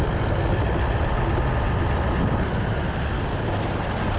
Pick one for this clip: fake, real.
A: real